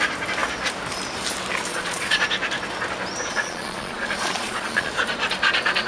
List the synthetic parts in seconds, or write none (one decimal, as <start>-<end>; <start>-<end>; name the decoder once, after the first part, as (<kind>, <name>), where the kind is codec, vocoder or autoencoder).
1.7-2.2 (vocoder, Vocos); 3.3-4.9